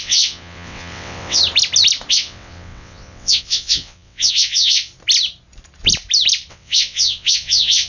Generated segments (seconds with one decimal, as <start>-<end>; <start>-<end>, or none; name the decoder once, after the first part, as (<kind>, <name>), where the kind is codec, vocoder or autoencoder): 0.0-1.4 (vocoder, WaveNeXt); 2.1-4.9; 6.5-7.9